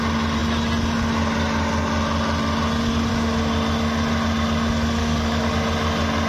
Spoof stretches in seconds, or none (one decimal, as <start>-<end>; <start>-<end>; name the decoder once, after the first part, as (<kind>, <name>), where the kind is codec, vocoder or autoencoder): 5.0-5.5 (codec, DAC)